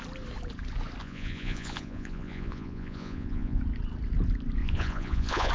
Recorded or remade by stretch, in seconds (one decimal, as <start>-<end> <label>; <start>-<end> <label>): 0.0-1.0 recorded; 1.0-3.6 remade; 3.6-4.6 recorded; 4.6-5.5 remade